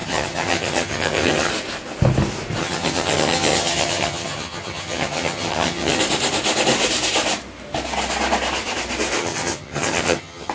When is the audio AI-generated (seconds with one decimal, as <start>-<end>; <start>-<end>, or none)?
0.0-1.5; 2.6-6.0; 9.2-10.5